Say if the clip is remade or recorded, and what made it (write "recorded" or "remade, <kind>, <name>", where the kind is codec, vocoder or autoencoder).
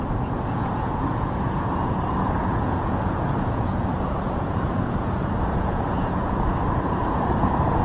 remade, vocoder, Vocos